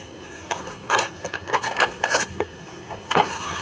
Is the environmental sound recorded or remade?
remade